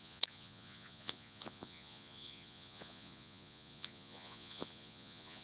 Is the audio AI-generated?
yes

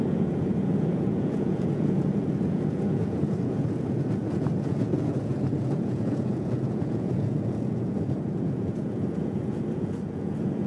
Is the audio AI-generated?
yes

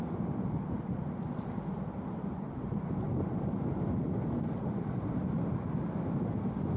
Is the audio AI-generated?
no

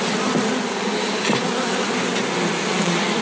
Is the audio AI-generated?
no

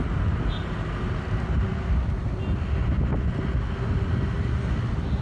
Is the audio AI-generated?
no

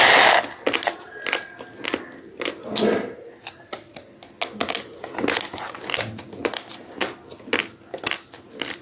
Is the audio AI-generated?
no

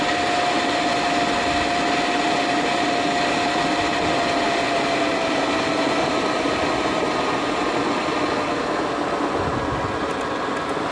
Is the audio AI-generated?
no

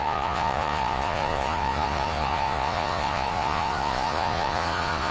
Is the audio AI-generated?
yes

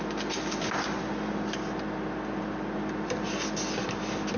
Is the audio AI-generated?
no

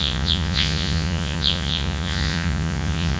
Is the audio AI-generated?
yes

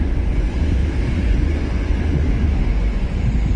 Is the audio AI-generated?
yes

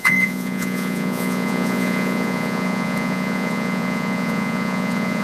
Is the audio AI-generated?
yes